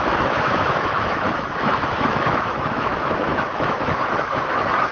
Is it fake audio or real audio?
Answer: fake